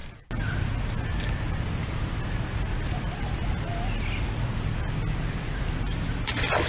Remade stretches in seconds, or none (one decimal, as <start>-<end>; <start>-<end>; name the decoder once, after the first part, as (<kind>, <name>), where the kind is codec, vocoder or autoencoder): none